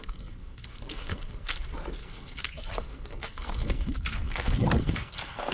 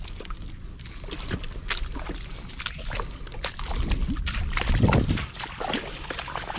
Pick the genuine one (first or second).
second